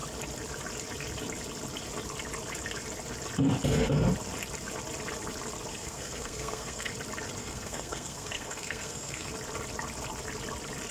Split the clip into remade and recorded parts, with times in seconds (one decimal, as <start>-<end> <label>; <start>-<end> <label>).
0.0-5.7 recorded; 5.7-6.9 remade; 6.9-7.4 recorded; 7.4-9.3 remade; 9.3-10.9 recorded